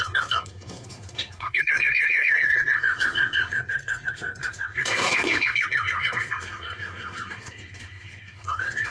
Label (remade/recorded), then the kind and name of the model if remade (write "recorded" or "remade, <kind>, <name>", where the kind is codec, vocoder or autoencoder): remade, codec, SNAC